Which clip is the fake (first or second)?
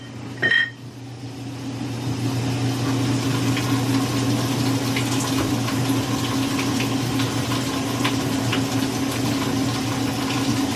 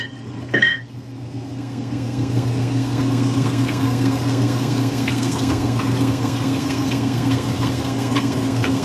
second